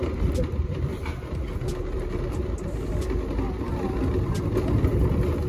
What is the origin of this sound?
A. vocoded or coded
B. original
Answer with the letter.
B